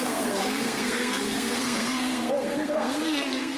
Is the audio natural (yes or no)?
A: no